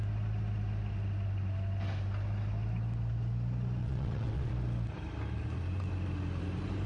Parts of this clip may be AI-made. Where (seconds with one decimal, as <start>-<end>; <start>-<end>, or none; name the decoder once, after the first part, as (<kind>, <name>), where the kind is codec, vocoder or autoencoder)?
3.8-4.5 (vocoder, WaveNeXt)

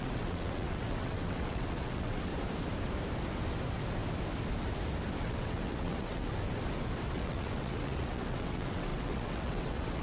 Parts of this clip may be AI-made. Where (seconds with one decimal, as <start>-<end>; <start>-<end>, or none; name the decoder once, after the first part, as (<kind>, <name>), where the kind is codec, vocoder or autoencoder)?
0.0-2.3 (vocoder, WaveNeXt); 5.2-6.3; 7.1-10.0

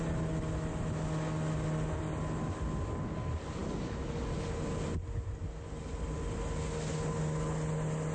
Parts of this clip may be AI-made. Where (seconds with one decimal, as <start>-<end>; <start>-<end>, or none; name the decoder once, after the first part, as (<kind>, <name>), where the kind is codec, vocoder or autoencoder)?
none

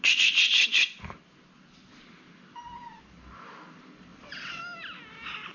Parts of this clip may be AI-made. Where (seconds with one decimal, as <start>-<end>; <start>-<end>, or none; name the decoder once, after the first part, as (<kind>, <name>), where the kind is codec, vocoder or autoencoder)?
4.1-4.6 (vocoder, WaveNeXt)

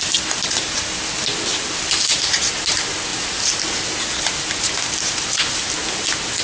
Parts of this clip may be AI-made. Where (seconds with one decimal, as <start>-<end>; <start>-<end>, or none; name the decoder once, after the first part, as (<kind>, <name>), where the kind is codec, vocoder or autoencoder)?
none

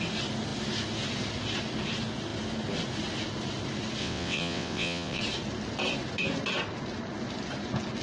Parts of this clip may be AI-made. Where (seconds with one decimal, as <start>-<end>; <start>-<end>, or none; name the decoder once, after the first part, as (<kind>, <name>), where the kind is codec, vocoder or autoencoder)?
4.0-5.2 (vocoder, WaveNeXt)

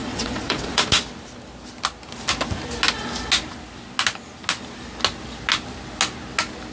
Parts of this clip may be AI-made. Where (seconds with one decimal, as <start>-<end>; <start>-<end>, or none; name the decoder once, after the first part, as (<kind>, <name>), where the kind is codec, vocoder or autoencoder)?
0.0-0.8 (vocoder, WaveNeXt)

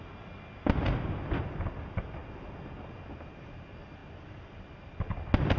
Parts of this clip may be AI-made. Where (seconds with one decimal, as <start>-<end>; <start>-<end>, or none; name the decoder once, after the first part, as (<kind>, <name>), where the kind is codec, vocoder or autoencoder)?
none